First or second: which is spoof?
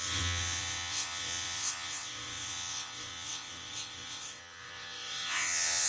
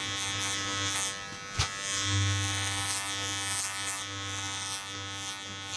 first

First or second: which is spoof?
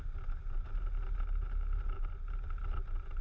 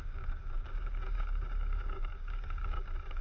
second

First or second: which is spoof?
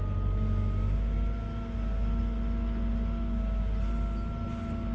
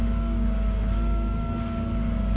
second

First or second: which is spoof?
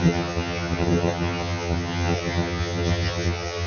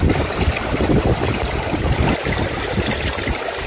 first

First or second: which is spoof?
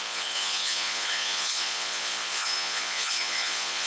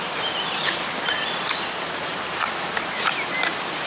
first